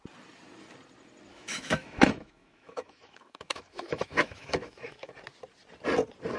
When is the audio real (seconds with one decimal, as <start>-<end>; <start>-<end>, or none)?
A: 0.0-1.3; 5.1-6.4